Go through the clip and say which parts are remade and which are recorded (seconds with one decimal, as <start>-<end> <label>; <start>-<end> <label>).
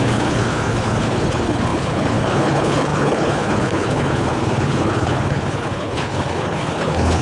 0.0-7.2 remade